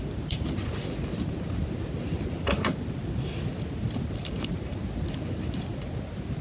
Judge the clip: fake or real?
real